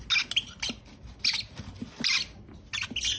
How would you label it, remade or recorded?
recorded